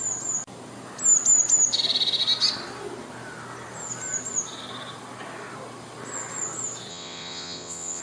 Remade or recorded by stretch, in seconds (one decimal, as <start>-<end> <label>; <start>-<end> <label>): 0.0-6.9 recorded; 6.9-8.0 remade